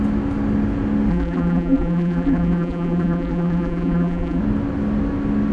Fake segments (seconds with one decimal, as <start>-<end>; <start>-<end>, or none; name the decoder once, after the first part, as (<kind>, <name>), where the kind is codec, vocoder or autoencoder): 1.1-4.4 (vocoder, BigVGAN v2)